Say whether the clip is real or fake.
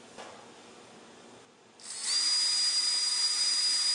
real